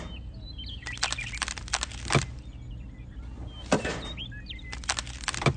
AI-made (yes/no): no